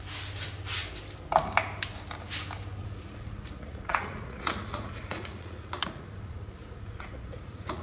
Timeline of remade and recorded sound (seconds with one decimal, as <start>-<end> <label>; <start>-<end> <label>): 0.0-2.8 recorded; 2.8-7.8 remade